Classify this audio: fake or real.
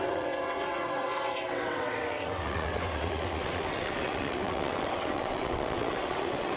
fake